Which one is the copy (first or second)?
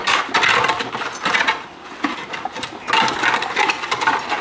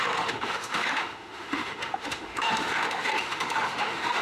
second